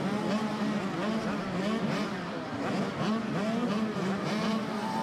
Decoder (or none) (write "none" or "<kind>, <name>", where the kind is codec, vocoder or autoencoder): none